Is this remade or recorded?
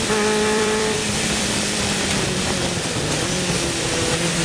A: remade